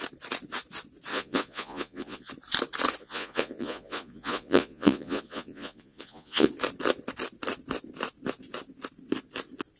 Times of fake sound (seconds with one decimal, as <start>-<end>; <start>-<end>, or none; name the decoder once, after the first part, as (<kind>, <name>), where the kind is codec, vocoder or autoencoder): 1.1-2.3 (vocoder, Vocos); 3.0-6.5